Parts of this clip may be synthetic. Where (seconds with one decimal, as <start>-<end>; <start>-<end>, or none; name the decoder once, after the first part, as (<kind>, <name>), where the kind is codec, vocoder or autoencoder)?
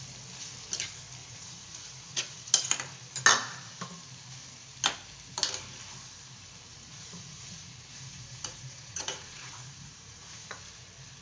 1.2-2.5 (vocoder, Vocos); 6.7-10.6